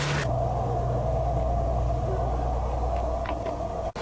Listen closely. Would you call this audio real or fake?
real